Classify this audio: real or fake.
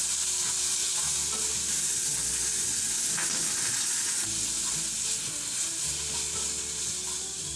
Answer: real